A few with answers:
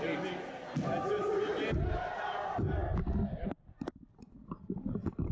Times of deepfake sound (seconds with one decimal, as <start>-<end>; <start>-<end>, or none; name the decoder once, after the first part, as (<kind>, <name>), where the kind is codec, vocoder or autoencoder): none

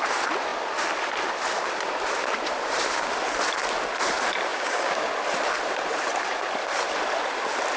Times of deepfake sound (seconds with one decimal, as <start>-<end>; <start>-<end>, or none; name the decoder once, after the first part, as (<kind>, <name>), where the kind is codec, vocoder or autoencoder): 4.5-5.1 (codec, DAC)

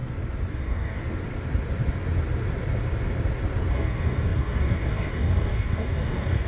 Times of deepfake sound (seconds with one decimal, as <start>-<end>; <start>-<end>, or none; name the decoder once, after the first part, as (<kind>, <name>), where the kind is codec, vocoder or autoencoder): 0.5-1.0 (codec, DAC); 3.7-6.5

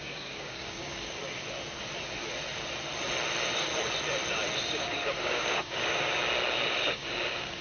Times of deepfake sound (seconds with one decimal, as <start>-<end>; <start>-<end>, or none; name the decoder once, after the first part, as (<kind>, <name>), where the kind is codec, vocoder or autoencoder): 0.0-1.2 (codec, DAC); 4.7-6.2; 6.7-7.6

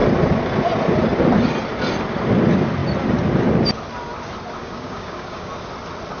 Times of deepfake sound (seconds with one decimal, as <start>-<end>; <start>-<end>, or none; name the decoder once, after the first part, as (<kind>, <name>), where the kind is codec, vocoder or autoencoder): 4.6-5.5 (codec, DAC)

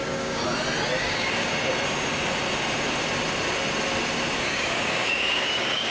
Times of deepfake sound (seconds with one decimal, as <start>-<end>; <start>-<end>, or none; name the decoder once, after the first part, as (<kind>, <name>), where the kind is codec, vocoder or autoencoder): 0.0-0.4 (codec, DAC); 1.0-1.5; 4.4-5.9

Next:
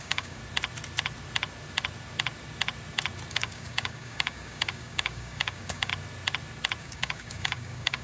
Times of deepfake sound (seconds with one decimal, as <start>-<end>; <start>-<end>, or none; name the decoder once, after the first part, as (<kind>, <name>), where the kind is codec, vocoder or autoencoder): 0.0-0.4 (codec, DAC); 3.3-5.9; 6.8-8.0

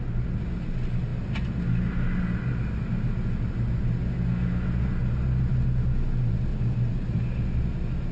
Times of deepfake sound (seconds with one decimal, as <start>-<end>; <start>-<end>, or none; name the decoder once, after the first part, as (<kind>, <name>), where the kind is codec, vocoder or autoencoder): none